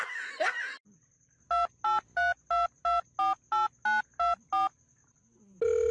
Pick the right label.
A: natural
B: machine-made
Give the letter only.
A